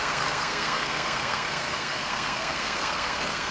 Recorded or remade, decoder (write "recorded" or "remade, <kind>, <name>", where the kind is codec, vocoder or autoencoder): remade, codec, SNAC